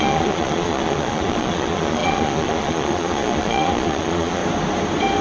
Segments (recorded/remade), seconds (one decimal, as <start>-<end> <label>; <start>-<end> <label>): 0.0-4.4 remade; 4.4-5.2 recorded